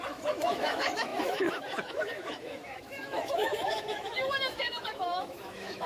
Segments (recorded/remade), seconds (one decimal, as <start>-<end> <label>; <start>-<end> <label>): 0.0-5.9 remade